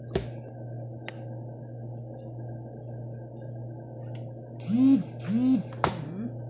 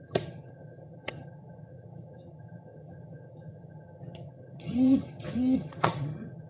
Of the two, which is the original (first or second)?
first